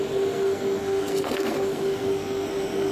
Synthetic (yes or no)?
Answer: yes